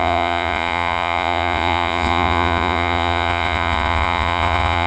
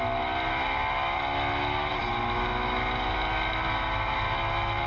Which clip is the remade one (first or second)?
first